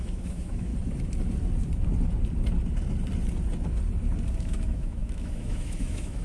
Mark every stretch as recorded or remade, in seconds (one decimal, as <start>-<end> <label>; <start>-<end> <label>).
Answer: 0.0-0.7 remade; 0.7-4.4 recorded; 4.4-6.2 remade